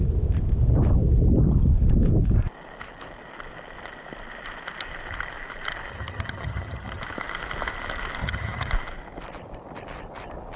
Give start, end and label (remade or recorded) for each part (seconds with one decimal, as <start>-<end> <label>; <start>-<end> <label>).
0.0-5.9 recorded; 5.9-7.0 remade; 7.0-8.2 recorded; 8.2-8.7 remade; 8.7-10.6 recorded